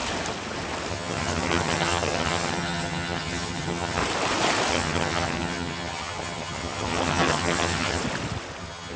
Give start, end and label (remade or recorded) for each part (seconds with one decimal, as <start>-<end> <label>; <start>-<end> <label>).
0.0-0.9 recorded; 0.9-4.0 remade; 4.0-4.7 recorded; 4.7-8.0 remade; 8.0-8.6 recorded; 8.6-9.0 remade